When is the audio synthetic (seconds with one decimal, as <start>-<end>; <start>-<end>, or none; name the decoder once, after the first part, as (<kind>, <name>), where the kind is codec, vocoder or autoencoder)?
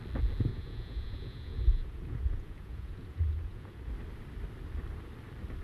0.5-3.9 (vocoder, Vocos)